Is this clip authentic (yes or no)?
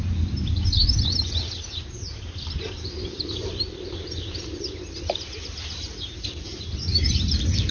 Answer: yes